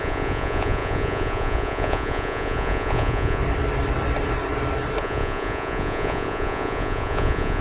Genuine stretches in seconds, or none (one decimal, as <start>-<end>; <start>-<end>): 3.4-5.0